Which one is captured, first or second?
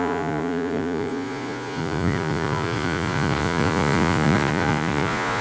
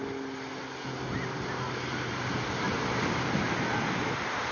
second